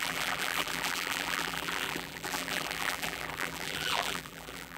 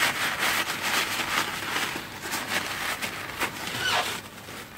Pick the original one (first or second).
second